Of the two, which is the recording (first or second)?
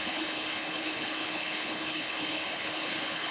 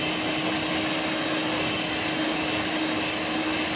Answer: second